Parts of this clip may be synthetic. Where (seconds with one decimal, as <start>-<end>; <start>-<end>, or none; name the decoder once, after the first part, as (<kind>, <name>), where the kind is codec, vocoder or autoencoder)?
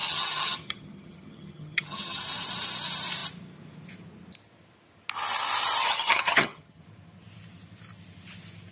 0.0-2.2 (vocoder, HiFi-GAN); 5.8-6.8